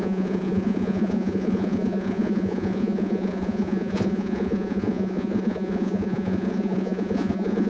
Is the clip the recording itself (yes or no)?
no